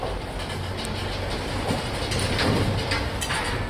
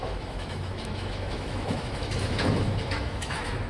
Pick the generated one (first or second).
second